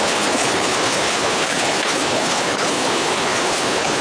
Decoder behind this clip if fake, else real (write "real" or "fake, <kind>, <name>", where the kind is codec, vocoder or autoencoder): fake, codec, HILCodec